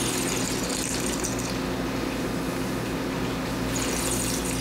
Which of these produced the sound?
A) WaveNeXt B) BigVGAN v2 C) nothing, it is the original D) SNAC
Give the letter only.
C